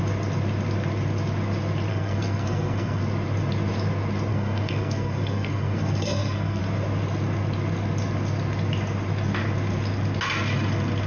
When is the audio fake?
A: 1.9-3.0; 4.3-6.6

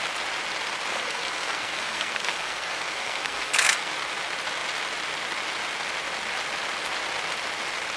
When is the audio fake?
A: 0.9-3.9

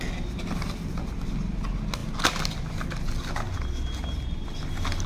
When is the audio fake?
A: none

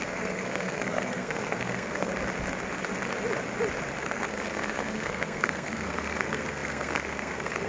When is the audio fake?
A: 0.0-2.1; 4.0-7.7

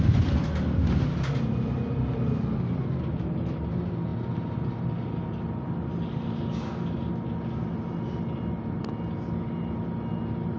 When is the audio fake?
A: none

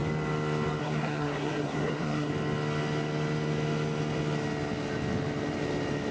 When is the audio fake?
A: 0.8-2.3

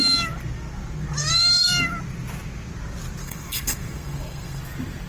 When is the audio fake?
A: 1.2-1.7; 3.2-4.6